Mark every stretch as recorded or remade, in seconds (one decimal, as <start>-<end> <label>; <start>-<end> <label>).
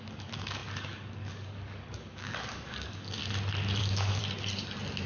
0.0-3.2 remade; 3.2-3.8 recorded; 3.8-4.2 remade; 4.2-5.1 recorded